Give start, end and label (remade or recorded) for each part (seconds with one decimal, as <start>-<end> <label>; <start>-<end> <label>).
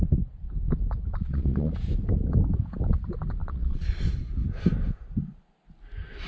0.0-1.1 recorded; 1.1-1.7 remade; 1.7-3.4 recorded; 3.4-4.0 remade; 4.0-6.3 recorded